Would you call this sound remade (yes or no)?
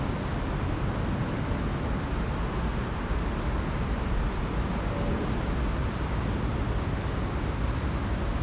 no